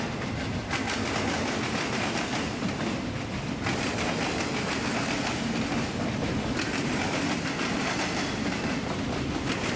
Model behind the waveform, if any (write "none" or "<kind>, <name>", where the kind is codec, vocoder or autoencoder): none